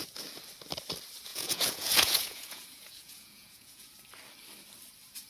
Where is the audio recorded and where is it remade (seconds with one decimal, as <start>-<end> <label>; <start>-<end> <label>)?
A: 0.0-1.3 recorded; 1.3-3.9 remade; 3.9-5.3 recorded